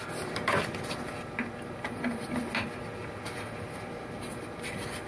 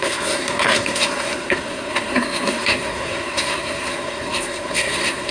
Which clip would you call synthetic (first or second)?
second